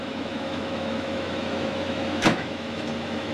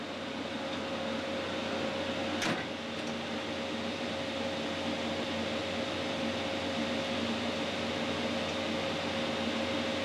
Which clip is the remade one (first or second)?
first